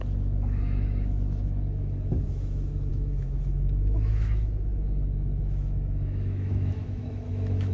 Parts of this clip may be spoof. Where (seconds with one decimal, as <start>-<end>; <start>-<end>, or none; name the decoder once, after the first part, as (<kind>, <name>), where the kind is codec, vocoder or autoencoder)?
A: 0.0-7.7 (autoencoder, DAC-VAE)